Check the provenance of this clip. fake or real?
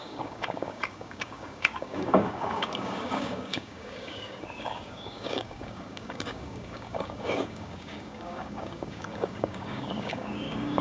fake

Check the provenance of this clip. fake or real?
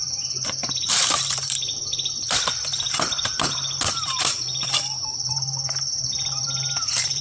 fake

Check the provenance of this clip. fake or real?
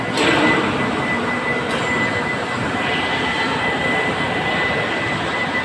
fake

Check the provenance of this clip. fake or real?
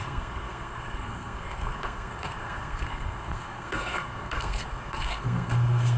fake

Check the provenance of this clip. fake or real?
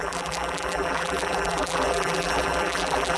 fake